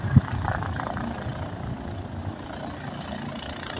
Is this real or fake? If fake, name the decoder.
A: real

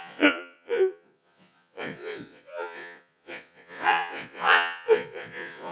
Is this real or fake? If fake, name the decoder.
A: fake, vocoder, Vocos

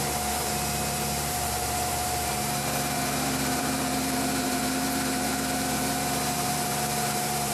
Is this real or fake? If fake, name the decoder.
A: fake, vocoder, BigVGAN v2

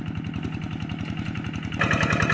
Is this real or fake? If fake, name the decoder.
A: real